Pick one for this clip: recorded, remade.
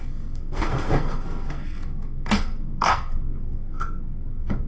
remade